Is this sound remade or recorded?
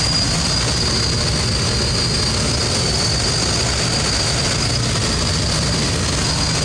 recorded